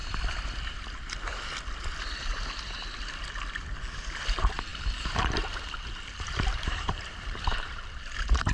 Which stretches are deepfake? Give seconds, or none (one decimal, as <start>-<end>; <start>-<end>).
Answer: 4.1-8.5